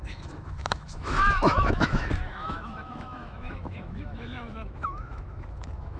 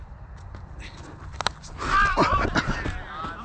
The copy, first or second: first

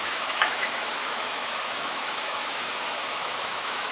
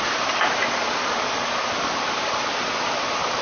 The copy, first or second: first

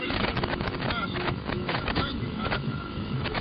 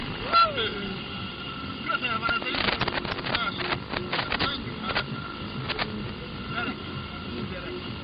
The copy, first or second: first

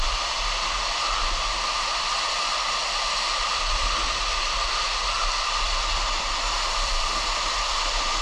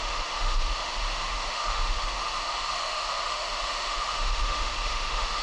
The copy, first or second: second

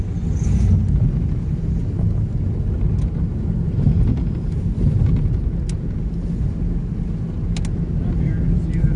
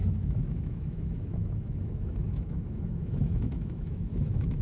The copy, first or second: second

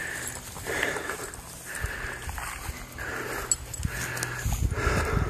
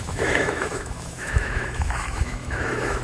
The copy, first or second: second